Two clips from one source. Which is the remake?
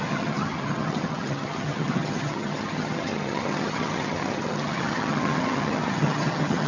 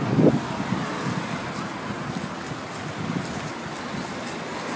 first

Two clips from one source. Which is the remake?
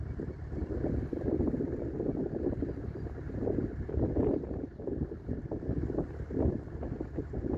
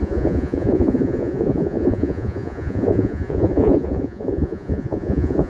second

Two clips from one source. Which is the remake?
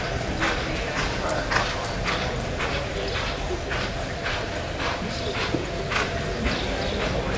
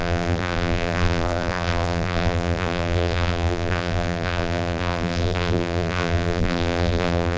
second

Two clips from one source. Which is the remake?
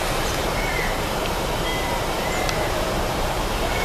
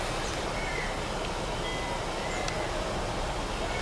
first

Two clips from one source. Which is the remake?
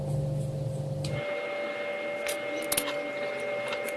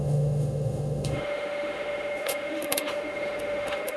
second